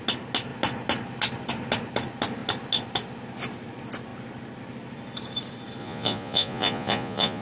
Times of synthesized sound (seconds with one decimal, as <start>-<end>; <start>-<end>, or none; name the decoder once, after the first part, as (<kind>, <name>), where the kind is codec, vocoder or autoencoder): 5.8-7.4 (vocoder, Vocos)